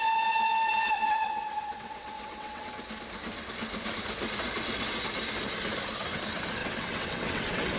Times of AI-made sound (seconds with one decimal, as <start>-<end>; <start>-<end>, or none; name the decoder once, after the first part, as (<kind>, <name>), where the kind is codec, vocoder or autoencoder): 1.0-2.7 (vocoder, WaveNeXt); 6.6-7.8